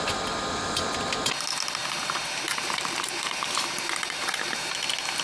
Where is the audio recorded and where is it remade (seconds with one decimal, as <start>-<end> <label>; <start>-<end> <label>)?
0.0-1.8 recorded; 1.8-4.7 remade; 4.7-5.2 recorded